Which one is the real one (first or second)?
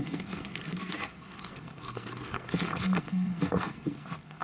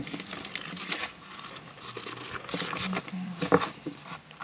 second